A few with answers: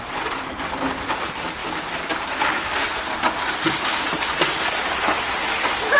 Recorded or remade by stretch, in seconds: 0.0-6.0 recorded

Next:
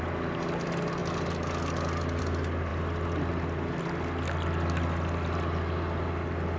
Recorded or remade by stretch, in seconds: 0.0-6.6 recorded